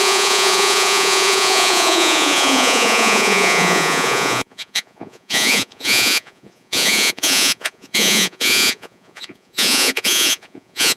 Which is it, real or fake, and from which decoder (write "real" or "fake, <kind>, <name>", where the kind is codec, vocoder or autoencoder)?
fake, vocoder, Vocos